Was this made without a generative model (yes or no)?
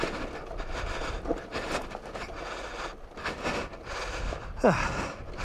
yes